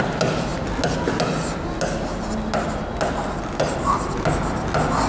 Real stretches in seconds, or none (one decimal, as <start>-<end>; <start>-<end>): 0.0-5.1